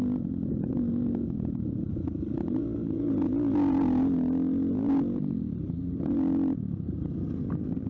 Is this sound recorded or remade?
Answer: recorded